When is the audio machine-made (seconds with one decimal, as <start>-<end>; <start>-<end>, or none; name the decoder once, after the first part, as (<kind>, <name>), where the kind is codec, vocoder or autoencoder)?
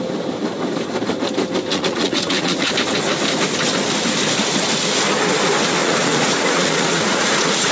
1.7-2.7 (vocoder, Vocos); 5.8-7.7